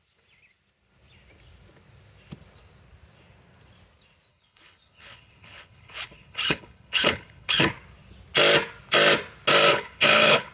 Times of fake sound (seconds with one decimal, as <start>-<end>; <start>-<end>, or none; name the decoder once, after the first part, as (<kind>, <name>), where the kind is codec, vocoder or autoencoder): 4.3-7.7 (codec, HILCodec); 9.7-10.5